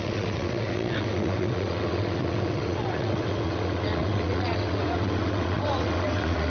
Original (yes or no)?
no